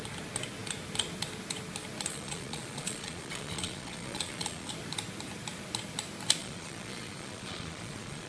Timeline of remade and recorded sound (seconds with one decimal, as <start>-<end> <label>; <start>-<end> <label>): 0.0-2.1 recorded; 2.1-4.7 remade; 4.7-6.4 recorded; 6.4-8.3 remade